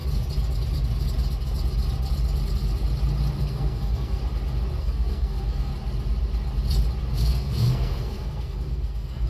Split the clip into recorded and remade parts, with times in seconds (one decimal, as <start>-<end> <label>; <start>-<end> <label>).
0.0-3.4 recorded; 3.4-4.2 remade; 4.2-4.8 recorded; 4.8-5.7 remade; 5.7-7.1 recorded; 7.1-9.3 remade